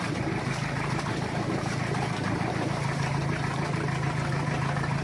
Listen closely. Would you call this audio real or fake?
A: fake